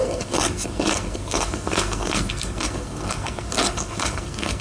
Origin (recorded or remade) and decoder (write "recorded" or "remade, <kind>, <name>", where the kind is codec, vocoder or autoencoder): remade, codec, SNAC